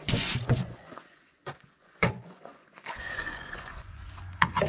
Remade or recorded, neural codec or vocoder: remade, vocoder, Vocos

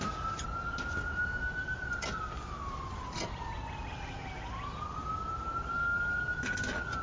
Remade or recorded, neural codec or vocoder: recorded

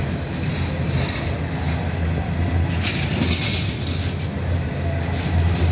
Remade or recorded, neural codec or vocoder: recorded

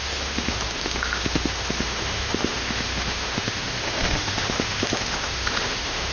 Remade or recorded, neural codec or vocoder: remade, autoencoder, DAC-VAE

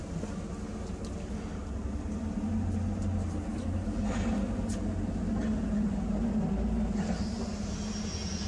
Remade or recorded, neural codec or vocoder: recorded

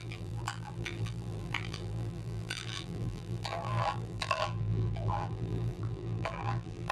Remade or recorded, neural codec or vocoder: remade, vocoder, BigVGAN v2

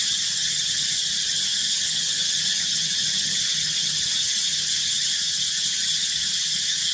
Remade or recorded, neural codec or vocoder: remade, vocoder, HiFi-GAN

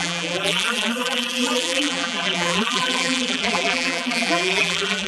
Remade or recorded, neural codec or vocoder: remade, vocoder, BigVGAN v2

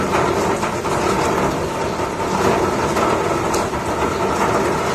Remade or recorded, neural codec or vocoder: recorded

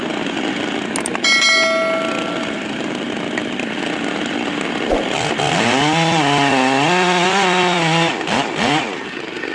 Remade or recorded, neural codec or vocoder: recorded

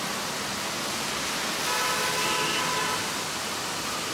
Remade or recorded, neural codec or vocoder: recorded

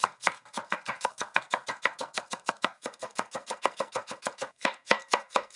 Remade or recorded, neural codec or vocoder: remade, codec, SNAC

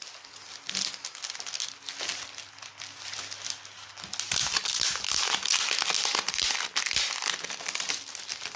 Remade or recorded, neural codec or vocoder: recorded